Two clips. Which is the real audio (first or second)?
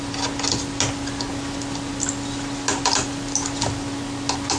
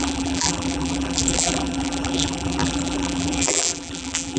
first